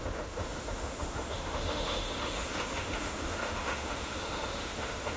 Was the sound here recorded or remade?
remade